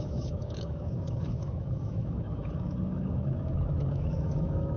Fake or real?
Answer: fake